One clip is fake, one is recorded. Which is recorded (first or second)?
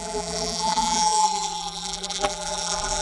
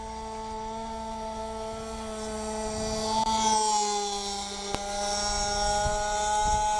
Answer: second